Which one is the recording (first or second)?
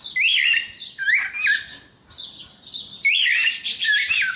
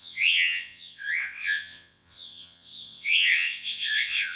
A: first